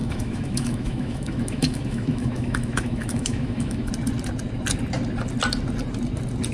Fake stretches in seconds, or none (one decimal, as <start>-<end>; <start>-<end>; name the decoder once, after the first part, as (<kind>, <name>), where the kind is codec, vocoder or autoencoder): 0.0-3.9 (autoencoder, DAC-VAE)